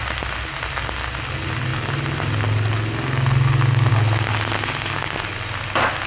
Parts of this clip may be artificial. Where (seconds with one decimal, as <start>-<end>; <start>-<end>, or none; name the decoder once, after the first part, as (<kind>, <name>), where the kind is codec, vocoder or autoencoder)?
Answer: none